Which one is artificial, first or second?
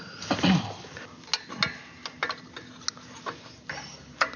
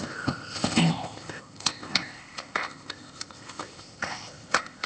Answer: second